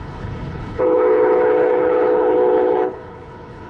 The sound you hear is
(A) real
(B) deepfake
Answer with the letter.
B